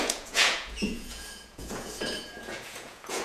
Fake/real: fake